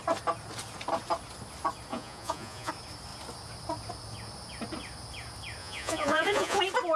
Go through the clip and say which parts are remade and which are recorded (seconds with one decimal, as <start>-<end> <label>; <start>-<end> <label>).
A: 0.0-1.9 recorded; 1.9-2.7 remade; 2.7-5.6 recorded; 5.6-6.6 remade; 6.6-7.0 recorded